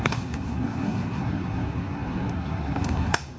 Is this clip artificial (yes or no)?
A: yes